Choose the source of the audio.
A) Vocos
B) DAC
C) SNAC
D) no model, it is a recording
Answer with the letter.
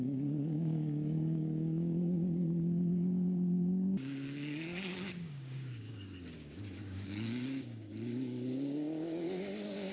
B